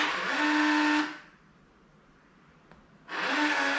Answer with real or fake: real